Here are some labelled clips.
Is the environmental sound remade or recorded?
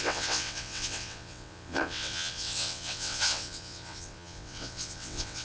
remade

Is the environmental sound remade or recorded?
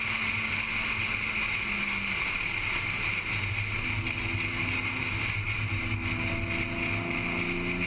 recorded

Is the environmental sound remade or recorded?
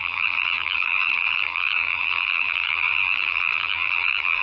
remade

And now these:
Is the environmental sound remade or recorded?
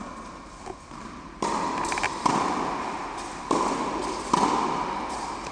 recorded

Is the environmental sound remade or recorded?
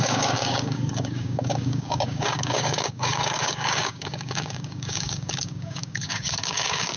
remade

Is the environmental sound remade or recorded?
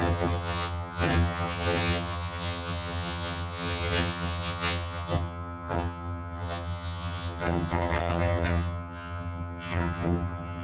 remade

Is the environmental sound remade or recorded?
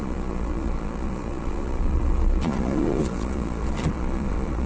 remade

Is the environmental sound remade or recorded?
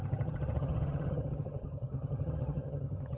remade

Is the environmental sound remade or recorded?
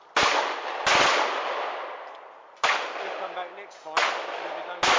recorded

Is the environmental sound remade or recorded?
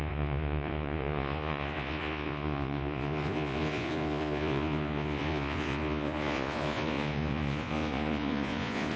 remade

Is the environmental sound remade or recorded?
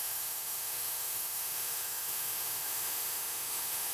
remade